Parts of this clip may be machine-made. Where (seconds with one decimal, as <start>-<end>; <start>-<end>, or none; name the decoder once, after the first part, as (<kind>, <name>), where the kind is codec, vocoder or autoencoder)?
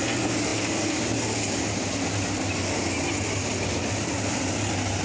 none